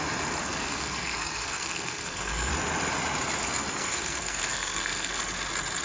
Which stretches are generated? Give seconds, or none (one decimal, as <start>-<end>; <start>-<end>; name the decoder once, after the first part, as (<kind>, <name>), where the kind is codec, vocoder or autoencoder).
0.4-2.5 (codec, SNAC); 3.7-5.2

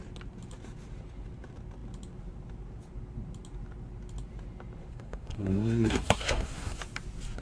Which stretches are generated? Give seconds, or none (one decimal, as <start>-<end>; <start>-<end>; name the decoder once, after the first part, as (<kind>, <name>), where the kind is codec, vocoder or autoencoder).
4.9-6.8 (codec, SNAC)

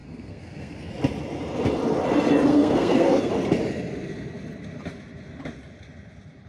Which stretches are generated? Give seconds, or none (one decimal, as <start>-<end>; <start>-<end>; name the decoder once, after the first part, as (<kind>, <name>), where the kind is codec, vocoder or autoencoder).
0.0-0.9 (codec, SNAC); 2.5-3.3

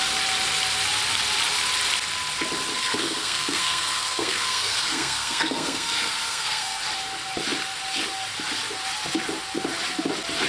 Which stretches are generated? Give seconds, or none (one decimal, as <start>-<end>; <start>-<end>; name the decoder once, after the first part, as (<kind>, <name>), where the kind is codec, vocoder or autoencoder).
2.7-6.8 (codec, SNAC)

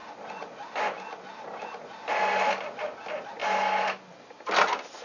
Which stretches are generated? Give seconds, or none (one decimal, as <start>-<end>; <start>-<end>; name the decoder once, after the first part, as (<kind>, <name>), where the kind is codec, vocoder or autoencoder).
none

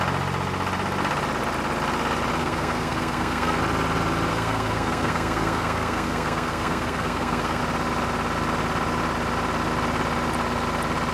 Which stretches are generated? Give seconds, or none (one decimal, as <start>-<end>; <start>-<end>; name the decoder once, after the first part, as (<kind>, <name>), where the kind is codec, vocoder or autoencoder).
2.4-3.6 (codec, SNAC); 4.3-7.6